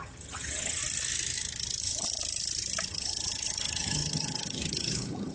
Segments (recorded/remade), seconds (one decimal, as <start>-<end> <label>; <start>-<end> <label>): 0.0-0.8 remade; 0.8-1.8 recorded; 1.8-2.2 remade; 2.2-2.9 recorded; 2.9-5.3 remade